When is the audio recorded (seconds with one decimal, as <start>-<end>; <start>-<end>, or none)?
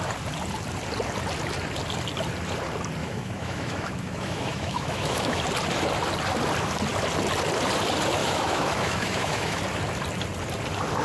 0.0-3.0; 5.4-8.2; 9.6-11.0